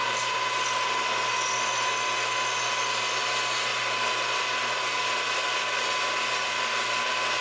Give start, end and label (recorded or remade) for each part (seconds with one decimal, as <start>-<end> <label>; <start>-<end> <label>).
0.0-7.4 recorded